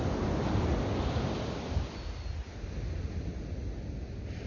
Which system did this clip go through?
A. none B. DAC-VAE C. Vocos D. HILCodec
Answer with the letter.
A